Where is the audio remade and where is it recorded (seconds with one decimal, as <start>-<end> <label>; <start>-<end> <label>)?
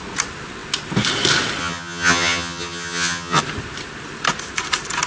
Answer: 0.0-1.6 recorded; 1.6-3.4 remade; 3.4-5.1 recorded